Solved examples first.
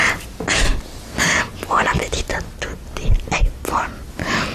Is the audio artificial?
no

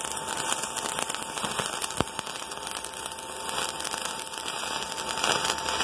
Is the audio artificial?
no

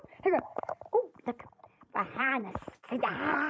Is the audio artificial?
yes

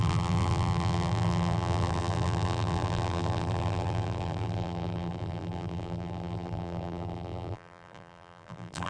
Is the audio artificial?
yes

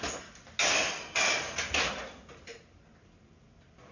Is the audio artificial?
no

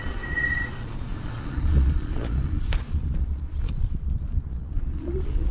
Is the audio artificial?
yes